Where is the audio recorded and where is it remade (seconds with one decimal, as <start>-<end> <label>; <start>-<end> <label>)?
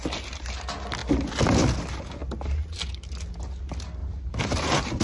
0.0-4.0 recorded; 4.0-5.0 remade